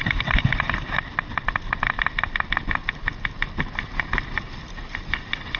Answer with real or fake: real